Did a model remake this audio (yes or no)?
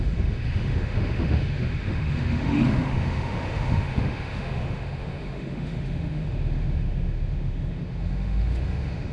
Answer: yes